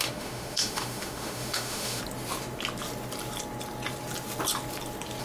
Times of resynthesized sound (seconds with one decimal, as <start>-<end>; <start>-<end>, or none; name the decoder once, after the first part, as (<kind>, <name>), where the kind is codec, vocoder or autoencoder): 0.0-2.0 (autoencoder, DAC-VAE)